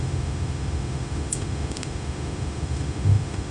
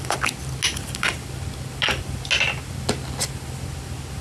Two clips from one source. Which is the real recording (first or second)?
second